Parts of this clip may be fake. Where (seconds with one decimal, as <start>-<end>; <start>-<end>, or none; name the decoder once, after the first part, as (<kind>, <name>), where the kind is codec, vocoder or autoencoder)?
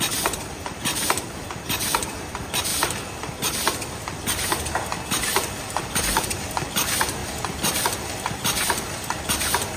0.0-9.8 (vocoder, BigVGAN v2)